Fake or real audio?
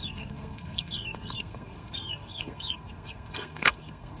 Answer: fake